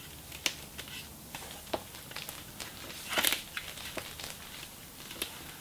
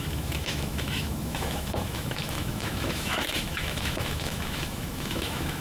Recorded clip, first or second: first